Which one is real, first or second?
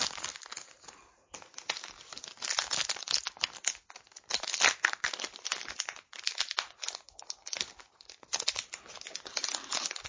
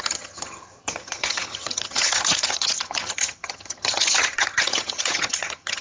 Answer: first